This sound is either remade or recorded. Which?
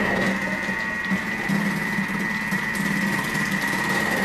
recorded